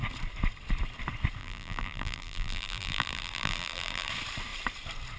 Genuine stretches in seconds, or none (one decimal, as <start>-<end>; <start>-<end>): 0.0-1.4; 4.1-5.2